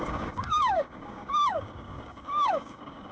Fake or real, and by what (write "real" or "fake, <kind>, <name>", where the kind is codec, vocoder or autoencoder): fake, codec, DAC